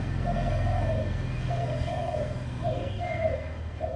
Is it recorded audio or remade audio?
remade